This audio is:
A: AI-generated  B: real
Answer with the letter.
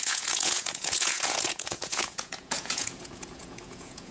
A